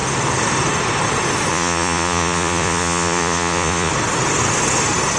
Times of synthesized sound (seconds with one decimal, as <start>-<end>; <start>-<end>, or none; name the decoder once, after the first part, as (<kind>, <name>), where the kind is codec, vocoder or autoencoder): 1.5-3.9 (vocoder, Vocos)